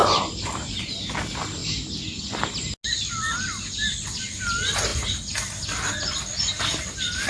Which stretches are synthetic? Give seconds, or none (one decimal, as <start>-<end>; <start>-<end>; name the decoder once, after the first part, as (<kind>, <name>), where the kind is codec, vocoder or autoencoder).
0.0-0.8 (vocoder, BigVGAN v2)